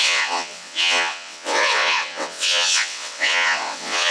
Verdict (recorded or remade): remade